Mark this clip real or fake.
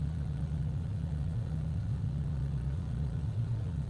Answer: fake